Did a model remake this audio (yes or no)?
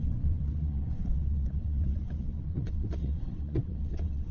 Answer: yes